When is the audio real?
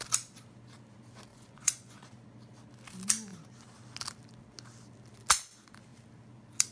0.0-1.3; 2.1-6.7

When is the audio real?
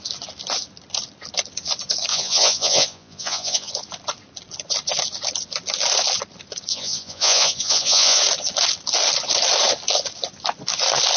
0.0-2.1; 3.7-6.7; 8.2-11.2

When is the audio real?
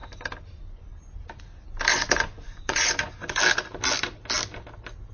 0.0-1.9; 3.4-5.1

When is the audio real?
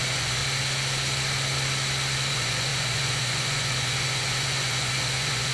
0.4-2.3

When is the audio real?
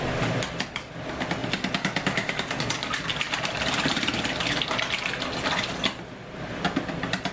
0.0-7.3